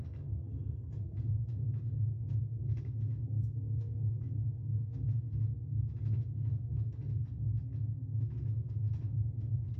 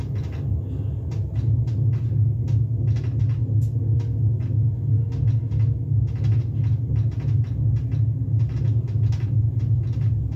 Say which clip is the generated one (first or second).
first